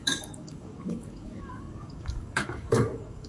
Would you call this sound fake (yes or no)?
yes